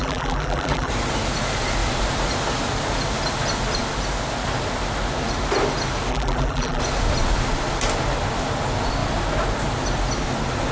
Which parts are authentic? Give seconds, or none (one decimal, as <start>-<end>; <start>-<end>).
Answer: 0.9-6.1; 6.8-10.7